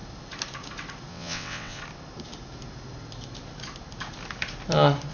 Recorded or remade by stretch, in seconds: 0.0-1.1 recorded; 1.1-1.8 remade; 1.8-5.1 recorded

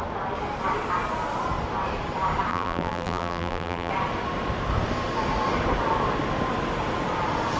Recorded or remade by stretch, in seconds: 0.0-2.5 recorded; 2.5-3.9 remade; 3.9-7.6 recorded

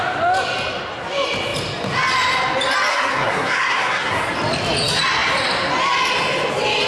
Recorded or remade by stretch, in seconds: 0.0-2.9 recorded; 2.9-4.2 remade; 4.2-6.9 recorded

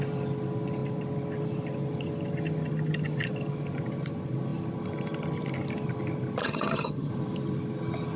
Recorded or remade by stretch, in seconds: 0.0-6.4 recorded; 6.4-7.1 remade; 7.1-8.2 recorded

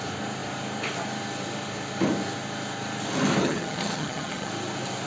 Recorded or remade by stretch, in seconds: 0.0-3.4 recorded; 3.4-4.5 remade; 4.5-5.1 recorded